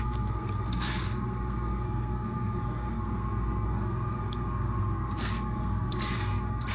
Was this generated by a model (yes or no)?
yes